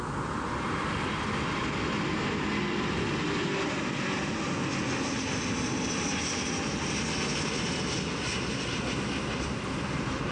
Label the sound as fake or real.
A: real